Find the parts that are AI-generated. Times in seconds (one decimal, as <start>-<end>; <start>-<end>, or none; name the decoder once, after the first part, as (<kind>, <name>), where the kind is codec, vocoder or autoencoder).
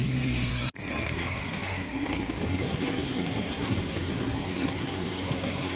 0.0-5.8 (codec, SNAC)